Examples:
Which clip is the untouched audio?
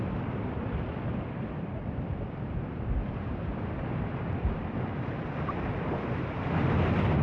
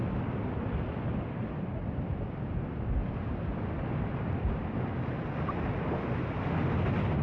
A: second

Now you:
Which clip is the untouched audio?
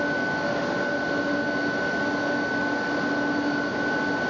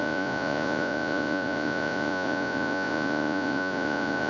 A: first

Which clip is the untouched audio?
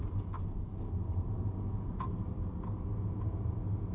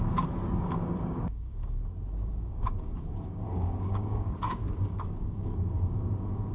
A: first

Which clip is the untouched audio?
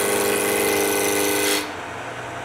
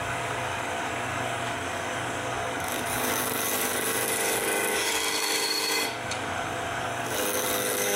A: first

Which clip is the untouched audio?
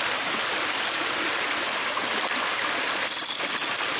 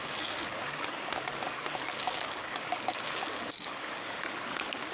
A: first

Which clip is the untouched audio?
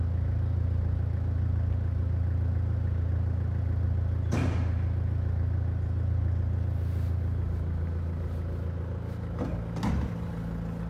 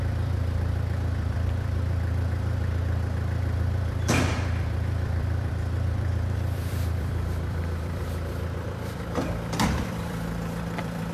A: first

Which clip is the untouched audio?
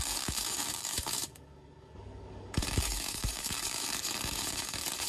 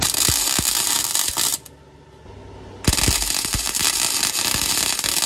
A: second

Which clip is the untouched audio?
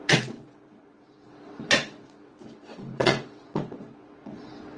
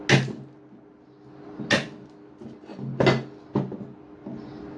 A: second